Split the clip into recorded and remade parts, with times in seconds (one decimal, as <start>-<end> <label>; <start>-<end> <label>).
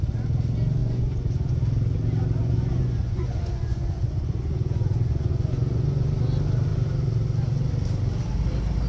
0.0-0.8 recorded; 0.8-1.5 remade; 1.5-2.4 recorded; 2.4-6.1 remade; 6.1-8.9 recorded